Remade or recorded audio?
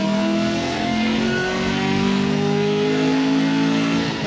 remade